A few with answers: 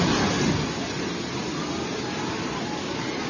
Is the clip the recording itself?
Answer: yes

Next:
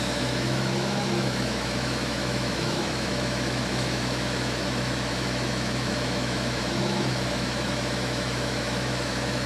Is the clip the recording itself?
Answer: no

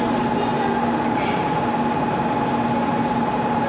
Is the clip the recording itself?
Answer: yes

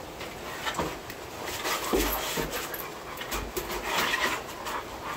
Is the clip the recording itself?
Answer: yes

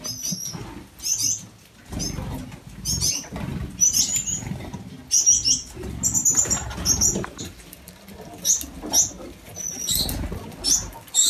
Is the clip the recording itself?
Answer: yes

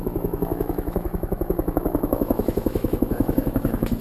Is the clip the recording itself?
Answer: no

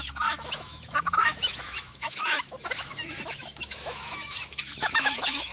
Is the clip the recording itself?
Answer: no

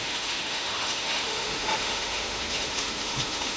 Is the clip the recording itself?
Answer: no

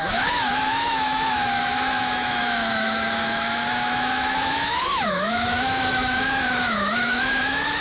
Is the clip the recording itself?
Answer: no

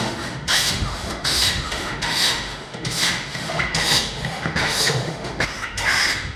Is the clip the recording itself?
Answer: no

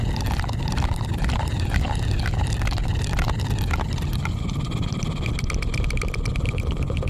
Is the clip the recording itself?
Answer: yes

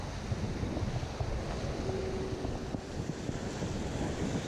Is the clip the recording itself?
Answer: yes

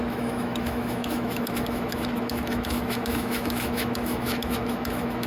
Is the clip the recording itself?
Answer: no